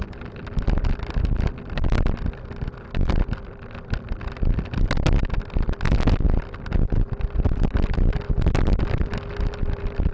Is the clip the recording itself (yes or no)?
yes